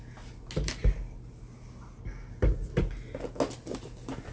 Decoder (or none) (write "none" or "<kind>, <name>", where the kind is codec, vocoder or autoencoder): none